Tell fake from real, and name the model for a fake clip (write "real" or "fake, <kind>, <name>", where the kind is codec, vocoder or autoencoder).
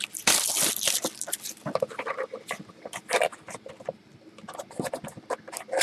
real